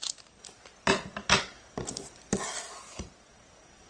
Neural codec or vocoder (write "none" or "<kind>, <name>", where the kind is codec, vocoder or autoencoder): none